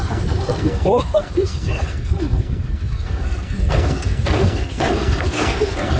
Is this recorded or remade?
remade